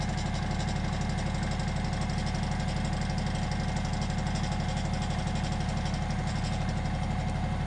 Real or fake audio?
real